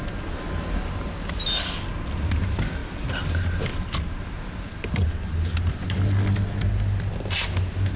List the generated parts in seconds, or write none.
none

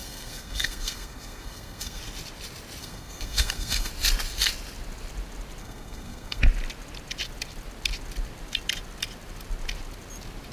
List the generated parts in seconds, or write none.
0.0-2.0 (codec, SNAC); 2.8-3.9; 5.6-6.4

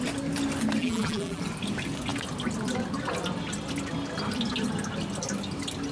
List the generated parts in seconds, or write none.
0.8-1.4 (vocoder, BigVGAN v2)

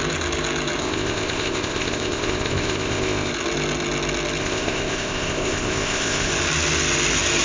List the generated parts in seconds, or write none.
0.8-3.3 (codec, ZipCodec); 4.4-6.3

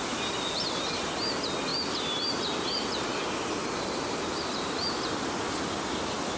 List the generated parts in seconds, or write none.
none

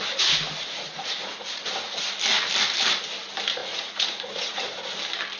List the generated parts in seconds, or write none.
0.7-1.7 (vocoder, Vocos); 3.6-4.6